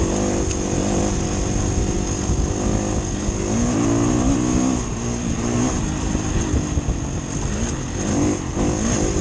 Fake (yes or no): no